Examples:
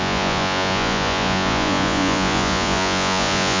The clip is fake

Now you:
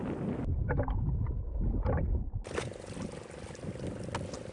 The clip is real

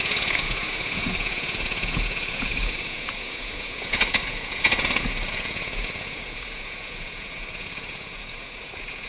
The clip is fake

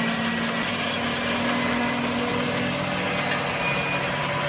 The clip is real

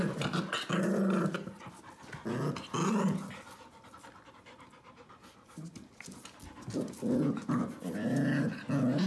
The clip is real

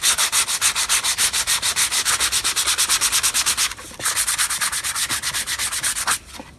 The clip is real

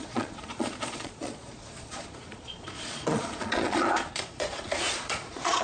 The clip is fake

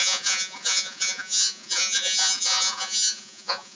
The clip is fake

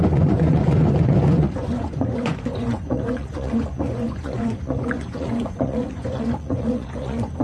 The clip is fake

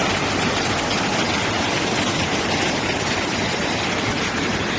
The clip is real